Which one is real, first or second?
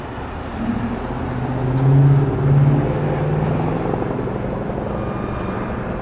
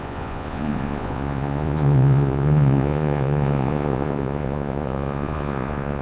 first